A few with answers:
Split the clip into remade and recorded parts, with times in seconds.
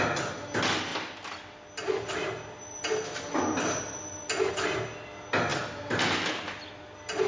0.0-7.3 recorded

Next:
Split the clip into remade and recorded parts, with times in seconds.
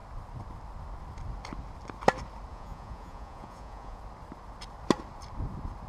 0.0-2.5 recorded; 2.5-4.0 remade; 4.0-5.9 recorded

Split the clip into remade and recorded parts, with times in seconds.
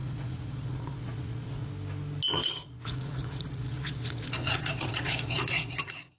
0.0-1.7 remade; 1.7-2.3 recorded; 2.3-6.2 remade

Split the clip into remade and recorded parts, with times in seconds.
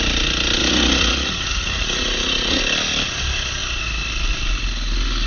0.0-0.6 recorded; 0.6-2.6 remade; 2.6-5.3 recorded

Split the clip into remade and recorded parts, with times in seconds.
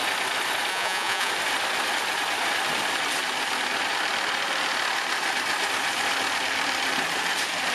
0.0-0.7 recorded; 0.7-1.3 remade; 1.3-7.7 recorded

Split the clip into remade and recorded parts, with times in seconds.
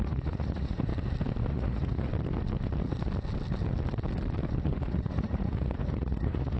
0.0-0.9 remade; 0.9-1.5 recorded; 1.5-2.1 remade; 2.1-4.6 recorded; 4.6-6.6 remade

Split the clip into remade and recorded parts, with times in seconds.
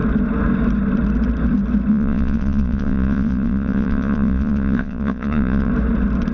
0.0-1.9 recorded; 1.9-5.7 remade; 5.7-6.3 recorded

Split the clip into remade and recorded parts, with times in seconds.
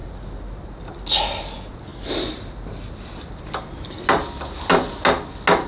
0.0-5.7 recorded